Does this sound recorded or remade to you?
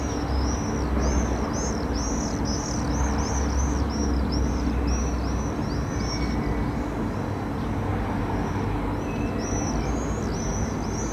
recorded